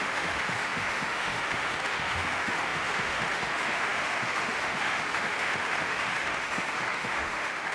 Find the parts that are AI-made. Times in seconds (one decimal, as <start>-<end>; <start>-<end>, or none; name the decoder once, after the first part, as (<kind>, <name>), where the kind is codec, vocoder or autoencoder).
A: 0.0-7.7 (autoencoder, DAC-VAE)